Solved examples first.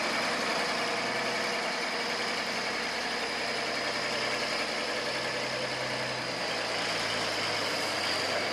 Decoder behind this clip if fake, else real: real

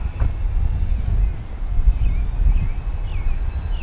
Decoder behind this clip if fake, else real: real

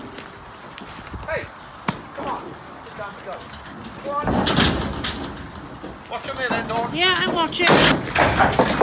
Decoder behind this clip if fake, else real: real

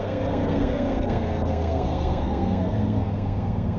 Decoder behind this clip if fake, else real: fake, codec, SNAC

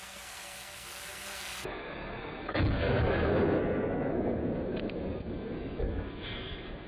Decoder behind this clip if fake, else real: fake, codec, SNAC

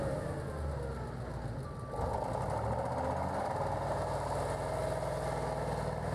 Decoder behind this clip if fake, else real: real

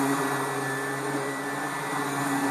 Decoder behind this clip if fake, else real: real